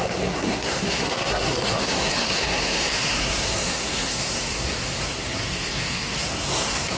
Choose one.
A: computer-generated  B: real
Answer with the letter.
A